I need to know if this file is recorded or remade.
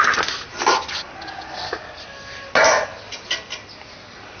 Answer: recorded